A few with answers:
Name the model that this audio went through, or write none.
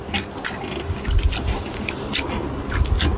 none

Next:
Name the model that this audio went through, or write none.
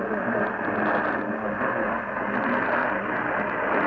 none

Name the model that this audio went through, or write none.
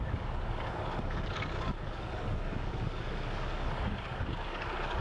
codec, DAC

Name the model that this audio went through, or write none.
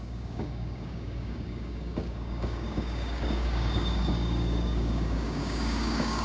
codec, DAC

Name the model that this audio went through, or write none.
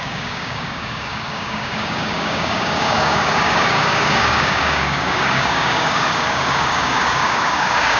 codec, DAC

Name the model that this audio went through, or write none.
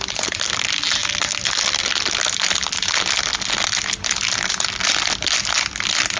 none